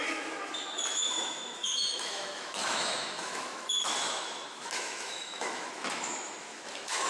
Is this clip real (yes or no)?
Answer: no